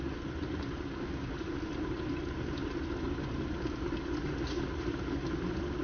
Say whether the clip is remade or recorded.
recorded